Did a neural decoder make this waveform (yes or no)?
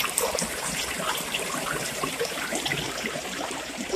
yes